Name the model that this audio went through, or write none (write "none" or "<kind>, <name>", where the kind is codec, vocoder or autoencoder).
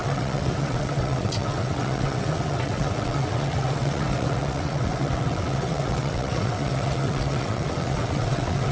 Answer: vocoder, WaveNeXt